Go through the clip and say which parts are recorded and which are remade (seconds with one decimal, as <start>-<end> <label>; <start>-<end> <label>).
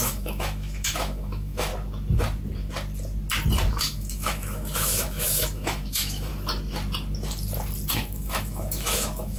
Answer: 0.0-1.7 remade; 1.7-3.7 recorded; 3.7-6.3 remade; 6.3-7.9 recorded; 7.9-9.4 remade